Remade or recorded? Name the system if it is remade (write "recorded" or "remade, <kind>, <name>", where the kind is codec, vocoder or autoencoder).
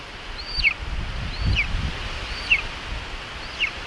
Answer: recorded